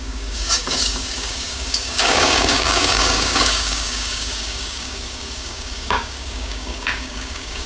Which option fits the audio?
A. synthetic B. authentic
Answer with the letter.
A